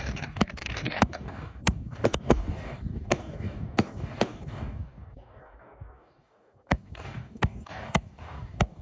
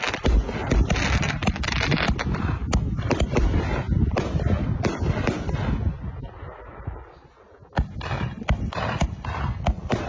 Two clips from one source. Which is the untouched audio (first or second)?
second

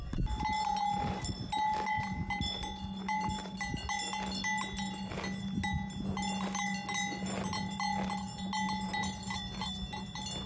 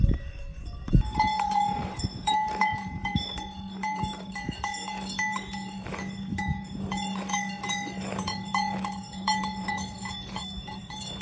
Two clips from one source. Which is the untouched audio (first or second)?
first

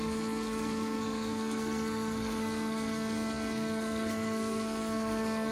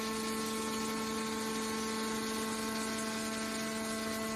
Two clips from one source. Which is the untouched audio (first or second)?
second